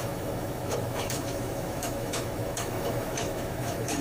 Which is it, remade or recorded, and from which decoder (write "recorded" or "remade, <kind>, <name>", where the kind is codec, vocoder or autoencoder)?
remade, autoencoder, DAC-VAE